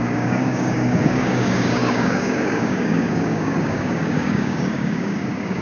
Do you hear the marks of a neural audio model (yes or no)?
yes